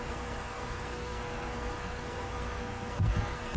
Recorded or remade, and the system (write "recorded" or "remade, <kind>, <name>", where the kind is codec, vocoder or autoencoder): remade, codec, SNAC